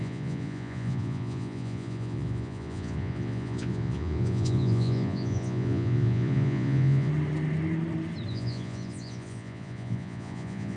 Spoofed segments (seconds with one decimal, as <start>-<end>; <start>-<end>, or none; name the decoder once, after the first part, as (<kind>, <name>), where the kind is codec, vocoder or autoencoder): 0.0-7.1 (vocoder, Vocos); 8.3-10.8